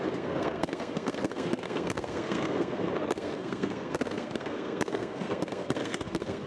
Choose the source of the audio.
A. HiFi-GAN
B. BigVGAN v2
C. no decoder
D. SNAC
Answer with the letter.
D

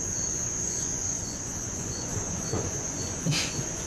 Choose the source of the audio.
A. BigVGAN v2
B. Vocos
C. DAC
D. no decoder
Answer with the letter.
B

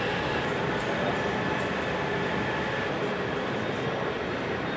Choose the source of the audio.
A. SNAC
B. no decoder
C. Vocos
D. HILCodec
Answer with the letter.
B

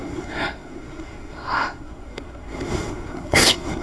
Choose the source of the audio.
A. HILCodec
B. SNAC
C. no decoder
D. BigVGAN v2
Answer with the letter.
B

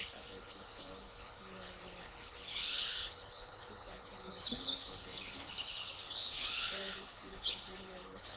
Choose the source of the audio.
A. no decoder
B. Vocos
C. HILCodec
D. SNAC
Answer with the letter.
C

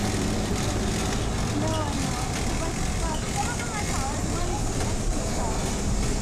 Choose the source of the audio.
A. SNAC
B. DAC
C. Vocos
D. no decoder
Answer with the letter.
D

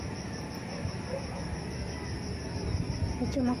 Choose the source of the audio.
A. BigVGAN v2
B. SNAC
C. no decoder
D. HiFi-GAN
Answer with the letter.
C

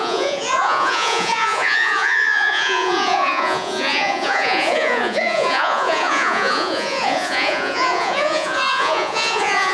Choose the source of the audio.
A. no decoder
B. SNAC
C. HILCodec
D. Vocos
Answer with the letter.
D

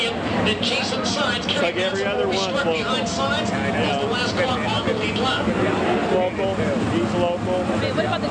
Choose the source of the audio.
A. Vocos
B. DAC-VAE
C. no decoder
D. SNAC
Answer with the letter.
C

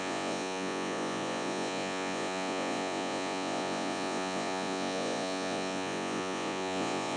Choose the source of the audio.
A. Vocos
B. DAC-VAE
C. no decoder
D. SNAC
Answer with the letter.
A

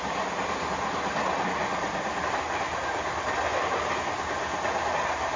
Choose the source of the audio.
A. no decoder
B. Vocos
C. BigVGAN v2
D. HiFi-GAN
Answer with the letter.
A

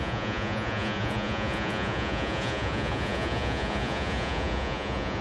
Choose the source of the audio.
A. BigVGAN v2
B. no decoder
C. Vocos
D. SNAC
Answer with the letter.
C